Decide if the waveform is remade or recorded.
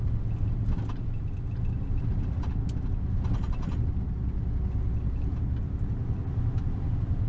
recorded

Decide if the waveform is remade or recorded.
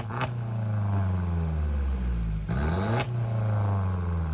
recorded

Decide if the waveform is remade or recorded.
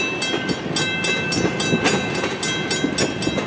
recorded